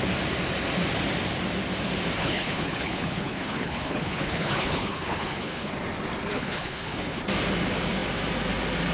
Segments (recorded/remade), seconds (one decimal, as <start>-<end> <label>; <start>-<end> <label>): 0.0-2.2 recorded; 2.2-5.7 remade; 5.7-6.3 recorded; 6.3-7.2 remade; 7.2-8.9 recorded